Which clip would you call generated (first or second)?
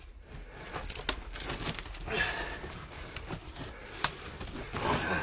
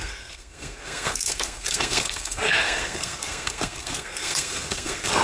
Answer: second